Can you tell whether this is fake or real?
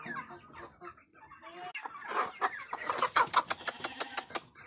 real